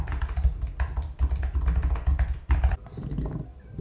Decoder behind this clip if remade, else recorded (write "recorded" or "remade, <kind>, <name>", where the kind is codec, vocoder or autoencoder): recorded